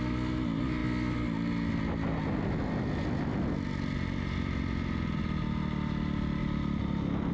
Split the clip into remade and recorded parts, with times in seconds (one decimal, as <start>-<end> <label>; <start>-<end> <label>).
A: 0.0-7.3 recorded